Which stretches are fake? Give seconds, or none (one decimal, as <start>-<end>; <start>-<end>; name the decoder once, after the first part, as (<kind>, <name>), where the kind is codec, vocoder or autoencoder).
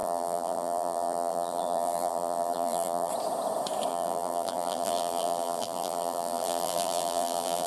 0.0-3.1 (vocoder, BigVGAN v2); 3.9-7.7